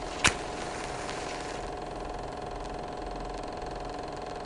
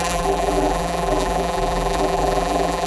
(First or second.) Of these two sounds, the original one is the first